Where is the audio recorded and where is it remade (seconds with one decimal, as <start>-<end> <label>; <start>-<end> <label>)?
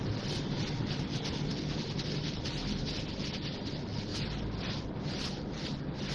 0.0-6.1 recorded